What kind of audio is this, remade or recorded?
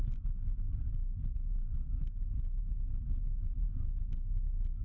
recorded